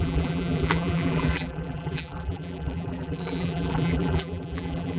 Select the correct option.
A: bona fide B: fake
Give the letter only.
B